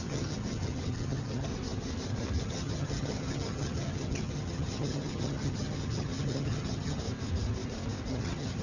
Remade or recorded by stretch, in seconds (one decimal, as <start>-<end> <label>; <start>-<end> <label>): 0.0-1.5 remade; 1.5-2.4 recorded; 2.4-7.0 remade; 7.0-8.1 recorded; 8.1-8.6 remade